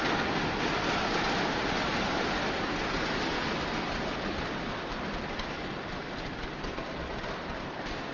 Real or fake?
real